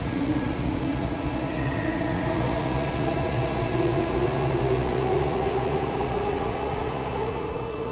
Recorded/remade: remade